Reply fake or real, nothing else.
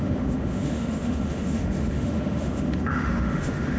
fake